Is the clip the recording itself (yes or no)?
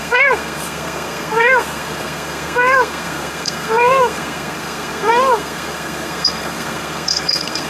no